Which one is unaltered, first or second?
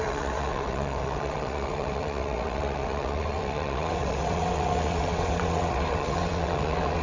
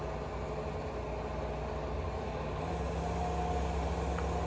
second